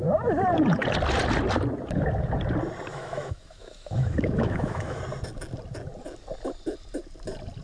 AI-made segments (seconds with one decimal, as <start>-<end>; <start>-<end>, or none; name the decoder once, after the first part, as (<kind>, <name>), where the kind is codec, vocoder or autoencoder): 2.9-5.0 (autoencoder, DAC-VAE)